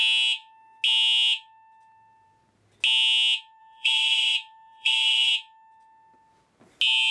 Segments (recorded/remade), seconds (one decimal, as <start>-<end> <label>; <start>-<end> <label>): 0.0-3.6 recorded; 3.6-5.3 remade; 5.3-7.1 recorded